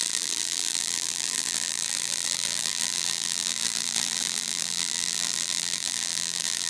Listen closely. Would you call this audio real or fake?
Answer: fake